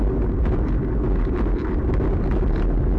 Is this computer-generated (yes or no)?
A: no